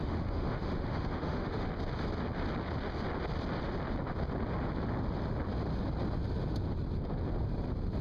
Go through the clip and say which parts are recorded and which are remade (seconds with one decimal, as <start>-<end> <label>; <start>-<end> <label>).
0.0-1.7 remade; 1.7-8.0 recorded